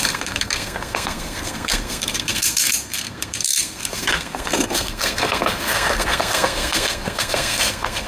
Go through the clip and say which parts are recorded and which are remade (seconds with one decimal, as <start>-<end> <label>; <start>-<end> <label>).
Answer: 0.0-8.1 remade

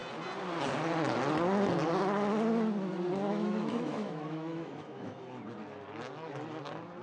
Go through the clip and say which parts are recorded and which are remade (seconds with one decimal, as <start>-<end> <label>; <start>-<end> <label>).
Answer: 0.0-3.3 recorded; 3.3-5.2 remade; 5.2-7.0 recorded

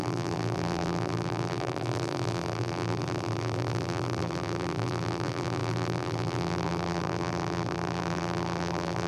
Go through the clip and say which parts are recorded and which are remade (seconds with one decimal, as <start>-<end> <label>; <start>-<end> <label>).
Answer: 0.0-9.1 remade

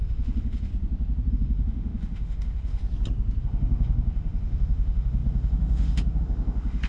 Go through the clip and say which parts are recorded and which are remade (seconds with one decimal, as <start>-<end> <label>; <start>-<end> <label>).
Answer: 0.0-0.7 remade; 0.7-1.3 recorded; 1.3-2.8 remade; 2.8-3.4 recorded; 3.4-6.9 remade

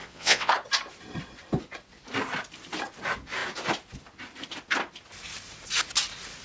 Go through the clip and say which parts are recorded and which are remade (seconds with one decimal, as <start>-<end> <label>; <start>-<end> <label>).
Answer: 0.0-0.5 remade; 0.5-6.4 recorded

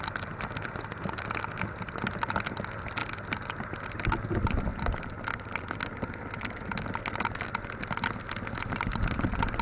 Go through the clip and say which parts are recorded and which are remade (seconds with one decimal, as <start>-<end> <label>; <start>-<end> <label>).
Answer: 0.0-9.6 recorded

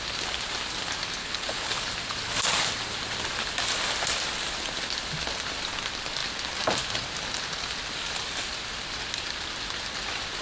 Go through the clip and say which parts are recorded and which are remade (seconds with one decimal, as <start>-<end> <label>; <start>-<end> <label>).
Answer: 0.0-1.2 recorded; 1.2-1.8 remade; 1.8-10.4 recorded